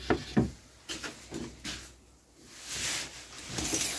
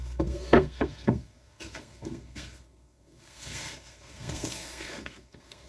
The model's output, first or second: second